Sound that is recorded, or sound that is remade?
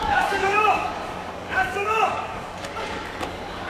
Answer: remade